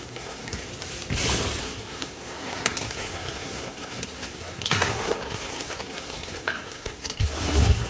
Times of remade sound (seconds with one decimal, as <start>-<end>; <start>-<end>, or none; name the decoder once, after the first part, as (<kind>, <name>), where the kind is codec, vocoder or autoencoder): 0.0-0.7 (codec, SNAC); 1.6-7.9